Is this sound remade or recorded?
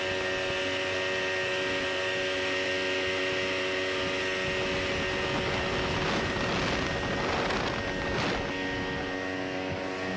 recorded